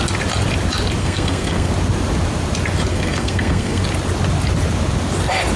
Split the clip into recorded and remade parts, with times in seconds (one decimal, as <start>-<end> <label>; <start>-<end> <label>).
0.0-1.0 recorded; 1.0-1.7 remade; 1.7-2.9 recorded; 2.9-3.8 remade; 3.8-5.6 recorded

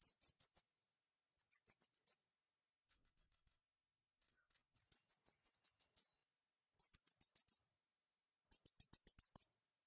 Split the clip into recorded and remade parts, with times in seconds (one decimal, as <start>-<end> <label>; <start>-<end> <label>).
0.0-2.7 recorded; 2.7-4.8 remade; 4.8-9.9 recorded

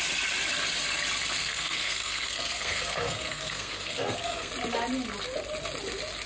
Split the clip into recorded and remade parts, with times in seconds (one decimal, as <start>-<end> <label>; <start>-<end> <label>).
0.0-1.4 recorded; 1.4-4.5 remade; 4.5-6.3 recorded

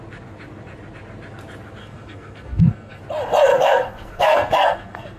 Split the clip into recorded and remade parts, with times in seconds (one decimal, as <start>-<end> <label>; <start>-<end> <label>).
0.0-1.8 recorded; 1.8-3.0 remade; 3.0-3.5 recorded; 3.5-5.2 remade

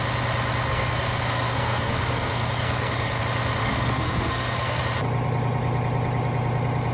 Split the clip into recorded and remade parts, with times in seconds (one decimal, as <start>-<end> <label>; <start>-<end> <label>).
0.0-0.7 recorded; 0.7-3.2 remade; 3.2-3.6 recorded; 3.6-4.8 remade; 4.8-6.9 recorded

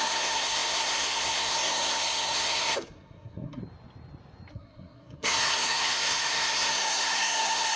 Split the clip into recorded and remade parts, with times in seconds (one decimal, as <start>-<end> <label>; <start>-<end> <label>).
0.0-3.6 remade; 3.6-4.5 recorded; 4.5-7.8 remade

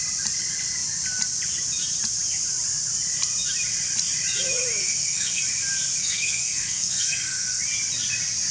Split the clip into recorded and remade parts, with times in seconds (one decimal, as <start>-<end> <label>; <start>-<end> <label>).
0.0-4.8 recorded; 4.8-5.4 remade; 5.4-6.0 recorded; 6.0-7.6 remade; 7.6-8.5 recorded